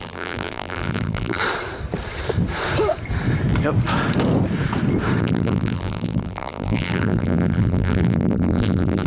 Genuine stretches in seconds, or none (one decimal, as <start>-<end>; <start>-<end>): 1.4-5.2